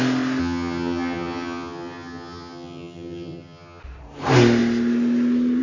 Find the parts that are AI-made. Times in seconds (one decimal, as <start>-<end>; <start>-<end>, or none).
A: 0.4-3.8